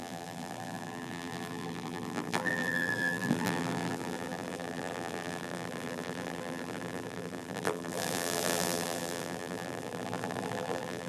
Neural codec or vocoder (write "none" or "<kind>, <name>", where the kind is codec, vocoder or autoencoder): vocoder, BigVGAN v2